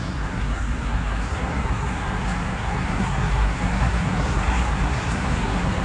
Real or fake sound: fake